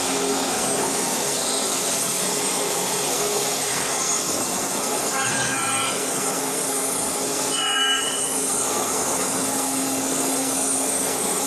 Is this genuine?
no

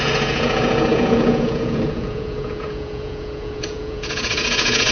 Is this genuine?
no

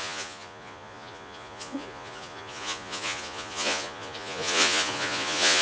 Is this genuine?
no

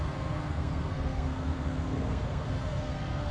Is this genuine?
no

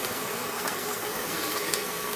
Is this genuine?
no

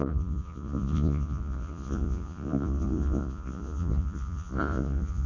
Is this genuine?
no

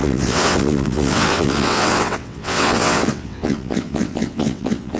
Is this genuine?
no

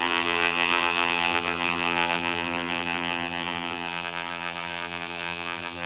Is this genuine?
no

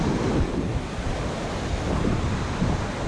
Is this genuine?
yes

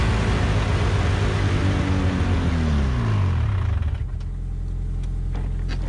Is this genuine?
yes